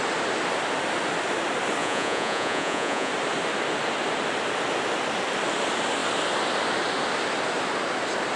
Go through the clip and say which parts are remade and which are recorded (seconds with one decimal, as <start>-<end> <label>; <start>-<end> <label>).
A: 0.0-1.8 recorded; 1.8-3.1 remade; 3.1-8.4 recorded